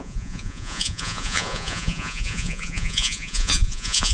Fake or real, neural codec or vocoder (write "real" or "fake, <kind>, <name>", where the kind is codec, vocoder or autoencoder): fake, vocoder, Vocos